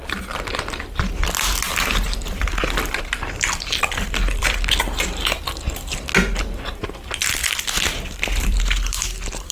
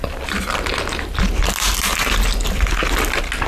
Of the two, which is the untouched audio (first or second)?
second